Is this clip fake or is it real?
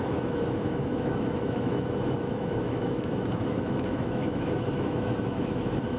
fake